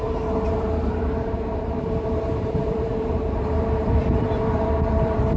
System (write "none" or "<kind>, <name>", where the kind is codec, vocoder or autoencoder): vocoder, BigVGAN v2